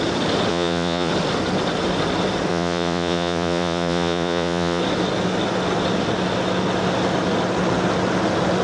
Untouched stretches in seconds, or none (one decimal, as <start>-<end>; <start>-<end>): 0.0-0.5; 1.1-2.5; 4.8-8.6